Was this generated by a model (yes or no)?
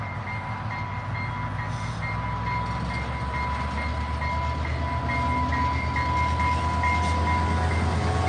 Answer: no